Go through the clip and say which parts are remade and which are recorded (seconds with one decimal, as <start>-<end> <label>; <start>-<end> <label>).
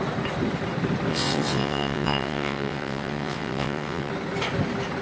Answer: 0.0-1.1 recorded; 1.1-4.1 remade; 4.1-5.0 recorded